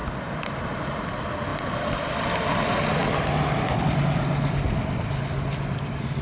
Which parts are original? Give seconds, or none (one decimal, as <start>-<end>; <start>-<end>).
0.0-6.2